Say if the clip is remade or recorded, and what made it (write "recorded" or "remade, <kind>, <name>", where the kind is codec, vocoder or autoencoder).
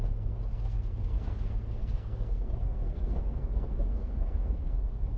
remade, codec, SNAC